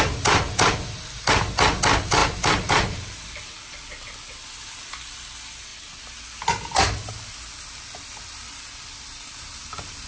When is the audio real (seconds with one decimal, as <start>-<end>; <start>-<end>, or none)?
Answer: 0.0-10.1